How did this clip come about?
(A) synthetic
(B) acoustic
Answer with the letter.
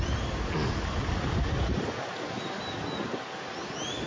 B